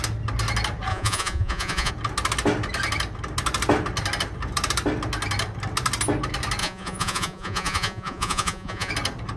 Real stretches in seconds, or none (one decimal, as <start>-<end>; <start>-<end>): 0.0-0.9; 1.9-6.6; 8.9-9.4